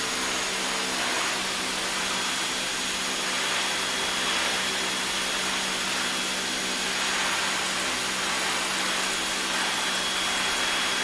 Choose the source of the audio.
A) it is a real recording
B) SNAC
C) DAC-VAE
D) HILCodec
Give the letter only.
A